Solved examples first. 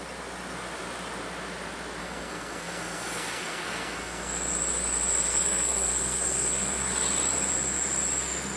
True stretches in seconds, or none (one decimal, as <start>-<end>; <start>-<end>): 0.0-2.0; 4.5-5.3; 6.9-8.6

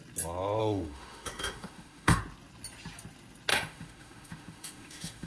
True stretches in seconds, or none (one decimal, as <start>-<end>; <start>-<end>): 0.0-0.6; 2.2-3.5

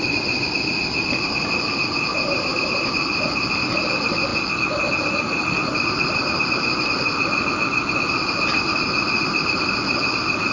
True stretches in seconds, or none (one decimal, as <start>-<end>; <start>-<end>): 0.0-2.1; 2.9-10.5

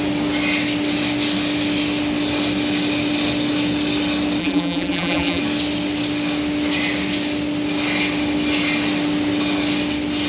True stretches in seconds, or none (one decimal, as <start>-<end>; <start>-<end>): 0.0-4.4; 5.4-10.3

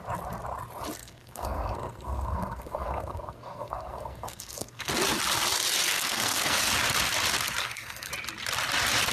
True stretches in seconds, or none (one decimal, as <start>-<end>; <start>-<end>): 0.0-1.0; 4.9-5.8; 6.6-7.6; 8.1-9.1

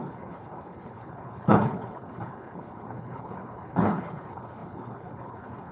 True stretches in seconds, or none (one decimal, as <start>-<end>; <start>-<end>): none